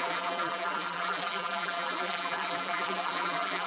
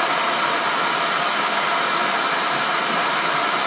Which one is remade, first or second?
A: first